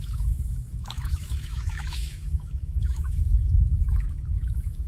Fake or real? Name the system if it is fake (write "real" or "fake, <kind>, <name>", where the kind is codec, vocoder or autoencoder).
fake, autoencoder, DAC-VAE